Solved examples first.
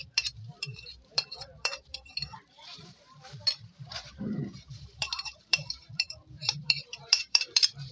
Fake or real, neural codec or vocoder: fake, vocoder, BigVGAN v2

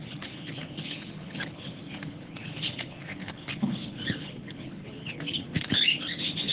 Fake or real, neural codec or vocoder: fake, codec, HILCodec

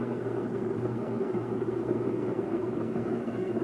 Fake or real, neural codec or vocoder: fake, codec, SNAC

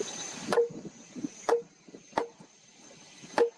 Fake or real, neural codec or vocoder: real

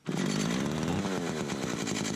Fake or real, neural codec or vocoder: real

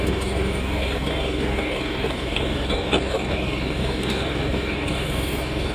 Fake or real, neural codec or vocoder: fake, codec, DAC